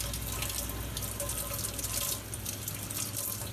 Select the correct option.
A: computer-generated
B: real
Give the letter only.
B